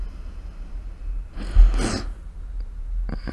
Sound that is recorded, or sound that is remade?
recorded